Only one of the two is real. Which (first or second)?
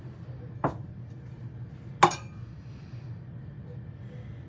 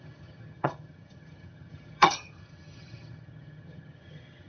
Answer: first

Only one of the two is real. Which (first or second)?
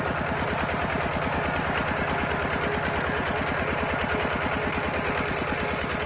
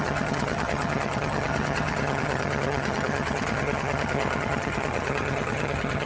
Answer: first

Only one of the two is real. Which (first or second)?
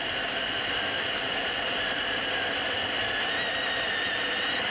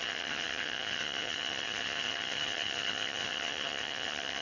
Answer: first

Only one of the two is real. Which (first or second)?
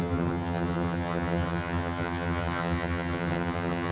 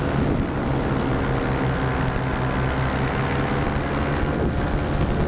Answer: second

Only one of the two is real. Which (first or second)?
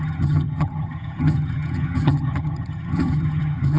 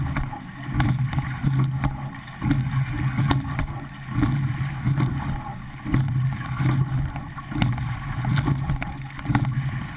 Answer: second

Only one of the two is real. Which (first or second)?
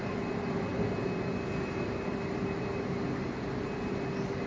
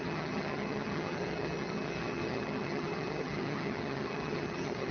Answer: first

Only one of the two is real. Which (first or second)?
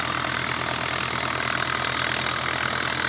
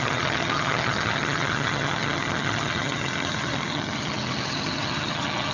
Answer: first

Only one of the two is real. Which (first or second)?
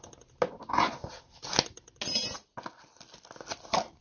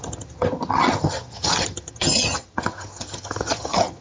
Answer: first